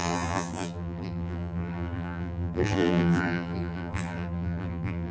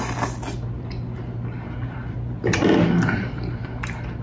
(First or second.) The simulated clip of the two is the first